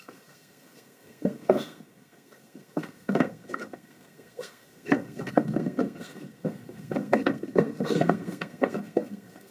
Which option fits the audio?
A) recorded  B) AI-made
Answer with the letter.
B